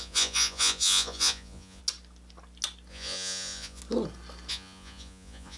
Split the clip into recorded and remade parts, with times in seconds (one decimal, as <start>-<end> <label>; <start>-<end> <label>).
0.0-1.8 remade; 1.8-2.9 recorded; 2.9-3.8 remade; 3.8-4.5 recorded; 4.5-5.6 remade